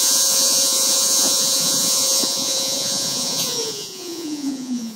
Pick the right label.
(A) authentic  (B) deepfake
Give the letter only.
B